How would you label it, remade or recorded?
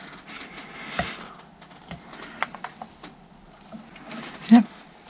recorded